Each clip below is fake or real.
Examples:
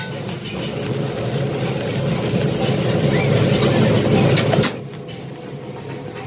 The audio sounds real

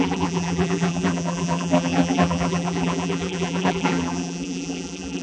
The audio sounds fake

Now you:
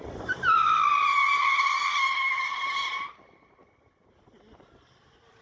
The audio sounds real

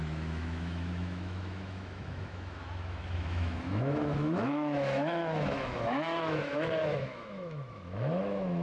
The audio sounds fake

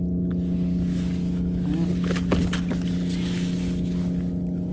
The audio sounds real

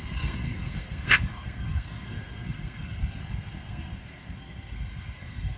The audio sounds fake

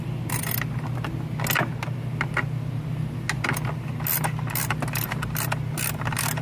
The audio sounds real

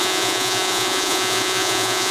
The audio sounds fake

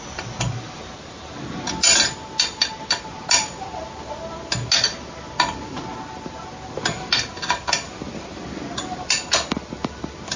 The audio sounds real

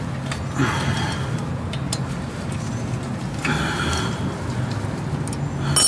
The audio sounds real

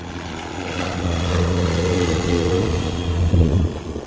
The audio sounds fake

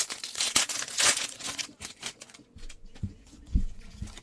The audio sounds fake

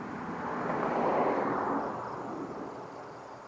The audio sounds real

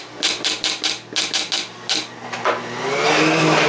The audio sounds real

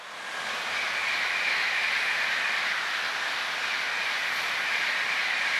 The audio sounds real